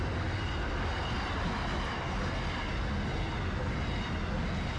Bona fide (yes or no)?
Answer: yes